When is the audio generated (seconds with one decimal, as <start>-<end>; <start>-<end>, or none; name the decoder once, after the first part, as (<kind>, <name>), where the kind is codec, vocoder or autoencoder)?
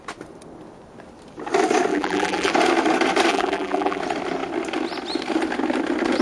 1.9-2.5 (vocoder, BigVGAN v2); 3.3-4.0